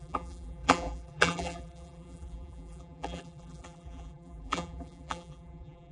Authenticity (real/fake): fake